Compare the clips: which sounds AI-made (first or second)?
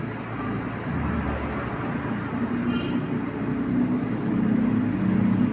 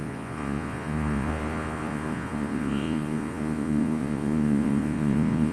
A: second